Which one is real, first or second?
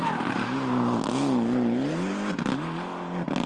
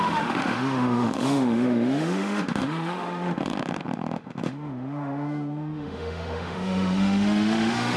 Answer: first